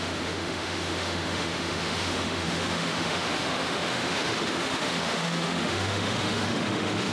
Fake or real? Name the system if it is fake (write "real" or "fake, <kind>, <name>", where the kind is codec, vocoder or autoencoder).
fake, autoencoder, DAC-VAE